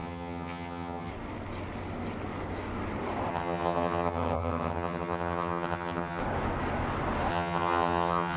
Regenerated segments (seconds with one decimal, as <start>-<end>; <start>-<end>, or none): 0.0-1.1; 3.3-6.2; 7.3-8.4